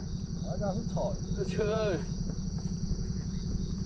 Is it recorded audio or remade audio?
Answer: remade